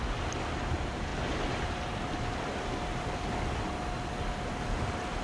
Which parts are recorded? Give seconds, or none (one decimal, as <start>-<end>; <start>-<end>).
0.0-5.2